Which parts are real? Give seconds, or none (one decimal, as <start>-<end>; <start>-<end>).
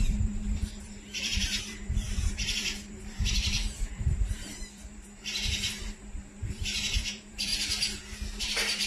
7.5-8.4